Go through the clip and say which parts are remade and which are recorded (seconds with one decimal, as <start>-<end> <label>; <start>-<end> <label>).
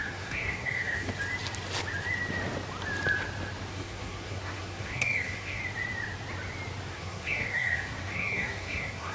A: 0.0-1.1 remade; 1.1-3.7 recorded; 3.7-5.6 remade; 5.6-6.9 recorded; 6.9-9.1 remade